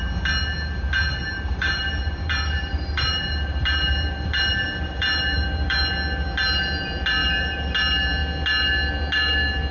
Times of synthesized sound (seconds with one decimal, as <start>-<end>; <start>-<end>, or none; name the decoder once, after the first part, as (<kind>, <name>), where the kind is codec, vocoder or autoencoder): 1.2-5.8 (vocoder, BigVGAN v2); 7.2-7.7